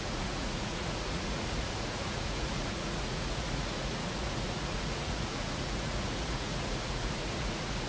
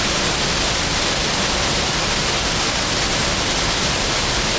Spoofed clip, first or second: first